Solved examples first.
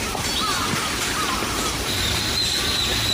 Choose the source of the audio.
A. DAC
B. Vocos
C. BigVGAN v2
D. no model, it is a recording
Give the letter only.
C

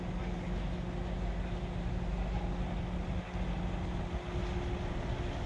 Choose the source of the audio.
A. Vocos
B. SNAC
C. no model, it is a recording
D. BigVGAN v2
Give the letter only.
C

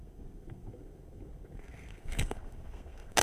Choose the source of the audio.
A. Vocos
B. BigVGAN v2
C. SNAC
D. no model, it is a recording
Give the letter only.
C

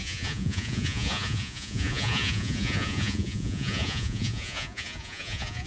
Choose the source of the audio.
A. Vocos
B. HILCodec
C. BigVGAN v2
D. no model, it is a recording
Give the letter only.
A